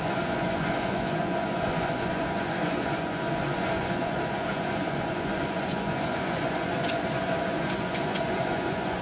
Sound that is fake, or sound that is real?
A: fake